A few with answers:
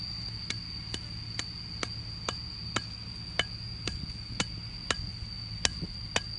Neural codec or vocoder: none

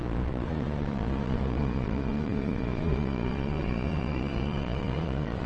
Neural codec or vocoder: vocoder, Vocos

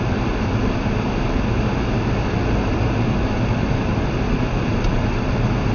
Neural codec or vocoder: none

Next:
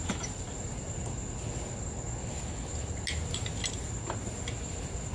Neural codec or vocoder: none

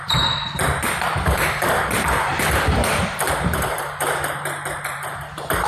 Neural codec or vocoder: vocoder, BigVGAN v2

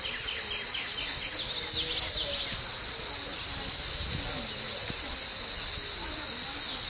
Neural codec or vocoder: none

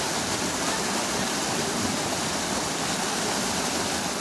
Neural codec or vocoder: none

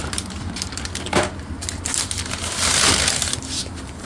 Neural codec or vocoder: none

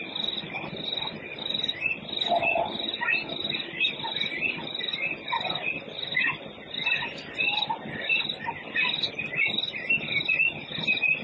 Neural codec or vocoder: none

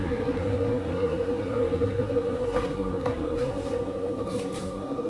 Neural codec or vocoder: codec, SNAC